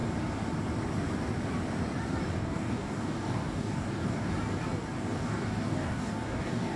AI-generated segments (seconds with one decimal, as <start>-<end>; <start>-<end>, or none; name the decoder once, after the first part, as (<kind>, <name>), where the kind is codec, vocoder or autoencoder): 2.3-4.3 (codec, DAC); 5.0-6.8